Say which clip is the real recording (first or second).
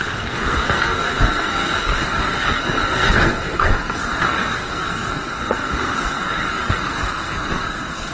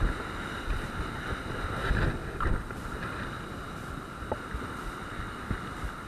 second